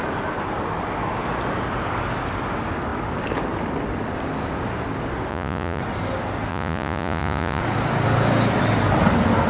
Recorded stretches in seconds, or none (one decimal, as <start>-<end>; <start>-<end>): 0.0-5.3; 5.8-6.5; 7.6-9.5